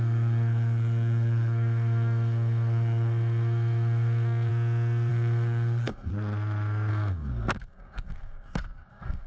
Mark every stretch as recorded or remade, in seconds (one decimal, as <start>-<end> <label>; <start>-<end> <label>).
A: 0.0-4.5 remade; 4.5-5.1 recorded; 5.1-6.1 remade; 6.1-6.9 recorded; 6.9-9.3 remade